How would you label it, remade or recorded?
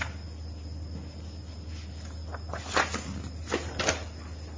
recorded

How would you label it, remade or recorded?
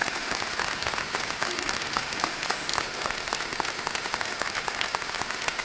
remade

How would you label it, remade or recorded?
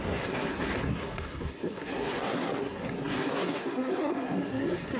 remade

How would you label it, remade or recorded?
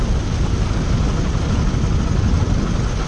recorded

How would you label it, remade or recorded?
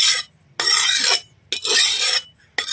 recorded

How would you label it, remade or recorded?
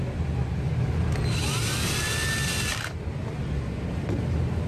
recorded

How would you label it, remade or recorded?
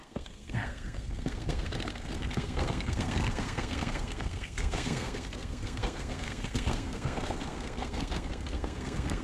remade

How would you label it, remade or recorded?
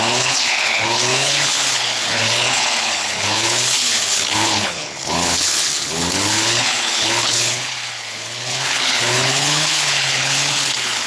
remade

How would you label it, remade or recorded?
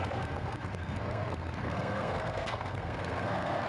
remade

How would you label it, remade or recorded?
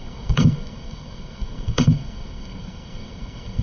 remade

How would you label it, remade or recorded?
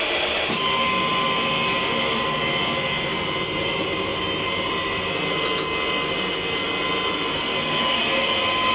recorded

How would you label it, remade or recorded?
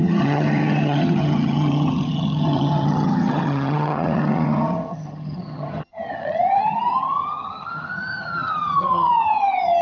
remade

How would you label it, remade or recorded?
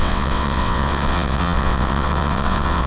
remade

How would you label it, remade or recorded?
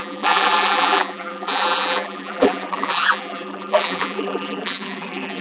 remade